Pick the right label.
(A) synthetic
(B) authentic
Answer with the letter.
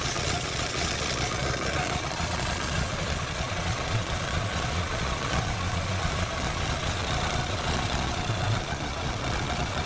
A